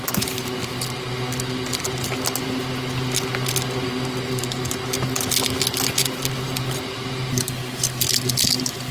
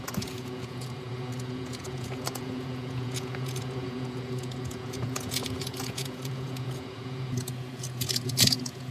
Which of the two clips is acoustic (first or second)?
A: first